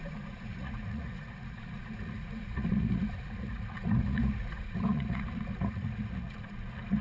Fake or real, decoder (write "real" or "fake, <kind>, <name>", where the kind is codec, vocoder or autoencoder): fake, vocoder, Vocos